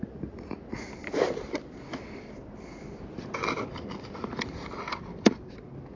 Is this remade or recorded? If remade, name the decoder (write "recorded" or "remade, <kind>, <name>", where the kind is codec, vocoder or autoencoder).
recorded